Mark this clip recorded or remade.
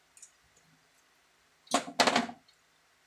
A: recorded